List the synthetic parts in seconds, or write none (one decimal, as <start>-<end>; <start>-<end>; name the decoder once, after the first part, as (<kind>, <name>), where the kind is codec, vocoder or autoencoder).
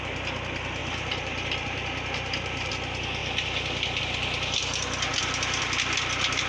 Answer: 0.8-2.7 (vocoder, BigVGAN v2)